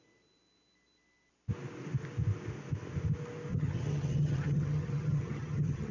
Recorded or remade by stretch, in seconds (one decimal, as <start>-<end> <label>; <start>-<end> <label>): 0.0-3.5 recorded; 3.5-5.9 remade